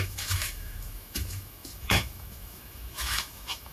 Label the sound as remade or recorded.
remade